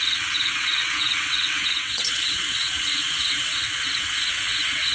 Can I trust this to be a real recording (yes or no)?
no